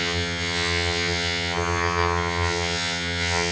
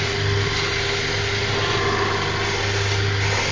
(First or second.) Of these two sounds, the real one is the second